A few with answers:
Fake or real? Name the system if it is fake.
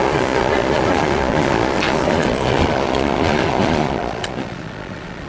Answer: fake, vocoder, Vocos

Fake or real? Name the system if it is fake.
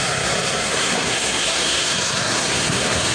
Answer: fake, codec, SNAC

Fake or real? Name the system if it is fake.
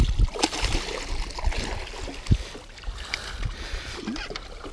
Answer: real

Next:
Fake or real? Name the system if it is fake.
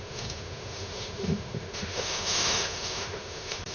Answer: fake, autoencoder, DAC-VAE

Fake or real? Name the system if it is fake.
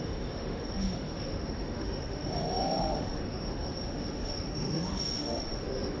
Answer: fake, autoencoder, DAC-VAE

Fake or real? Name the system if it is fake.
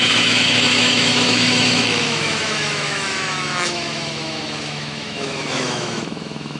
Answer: fake, autoencoder, DAC-VAE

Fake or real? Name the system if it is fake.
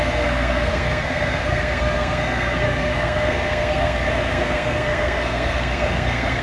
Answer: fake, codec, SNAC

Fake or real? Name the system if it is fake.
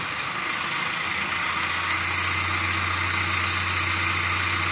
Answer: real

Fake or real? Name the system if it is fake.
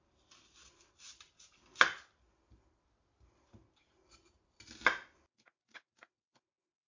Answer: real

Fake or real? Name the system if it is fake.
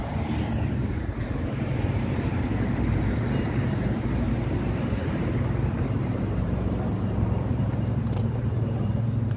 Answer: fake, vocoder, BigVGAN v2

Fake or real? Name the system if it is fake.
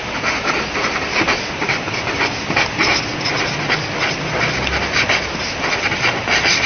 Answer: real